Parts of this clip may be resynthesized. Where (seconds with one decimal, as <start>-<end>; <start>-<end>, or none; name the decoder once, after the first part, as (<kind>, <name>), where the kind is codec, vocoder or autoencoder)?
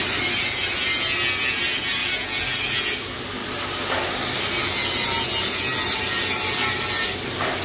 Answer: none